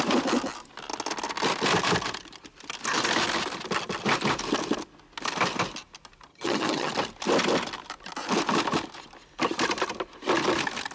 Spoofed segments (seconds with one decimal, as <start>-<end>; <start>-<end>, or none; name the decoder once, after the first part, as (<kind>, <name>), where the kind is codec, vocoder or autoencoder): 6.3-6.9 (vocoder, HiFi-GAN)